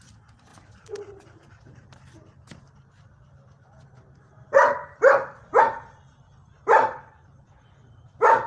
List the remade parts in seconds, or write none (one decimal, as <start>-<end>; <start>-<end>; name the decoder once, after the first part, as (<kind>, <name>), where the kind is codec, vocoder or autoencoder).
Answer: 0.5-5.6 (vocoder, BigVGAN v2); 6.4-8.1